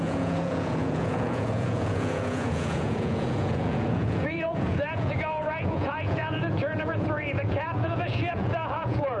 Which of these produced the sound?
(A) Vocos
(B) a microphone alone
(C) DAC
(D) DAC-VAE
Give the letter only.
A